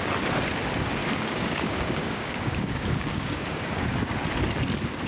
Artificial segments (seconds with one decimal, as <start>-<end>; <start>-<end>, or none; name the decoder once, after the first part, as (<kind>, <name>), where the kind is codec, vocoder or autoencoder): 1.0-4.1 (codec, DAC)